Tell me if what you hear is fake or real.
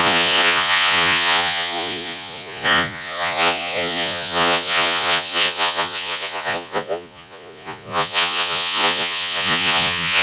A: fake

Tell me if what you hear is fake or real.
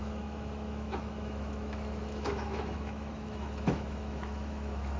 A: fake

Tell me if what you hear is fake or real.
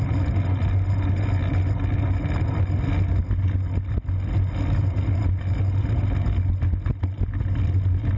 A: real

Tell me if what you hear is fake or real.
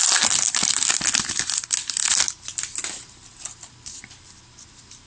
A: real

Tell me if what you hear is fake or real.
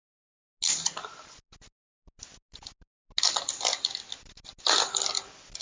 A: real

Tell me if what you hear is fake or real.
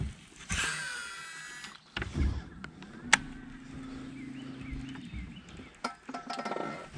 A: real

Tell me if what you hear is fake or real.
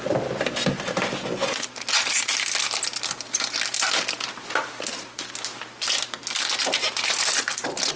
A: real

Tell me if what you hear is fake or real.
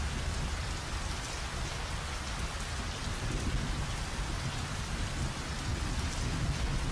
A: real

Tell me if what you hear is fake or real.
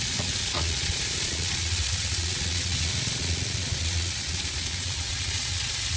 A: fake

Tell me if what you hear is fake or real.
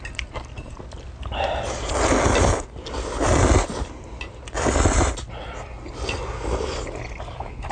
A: real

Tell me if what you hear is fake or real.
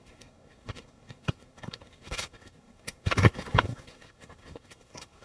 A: fake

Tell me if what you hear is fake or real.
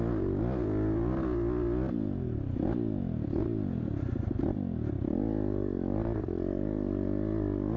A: real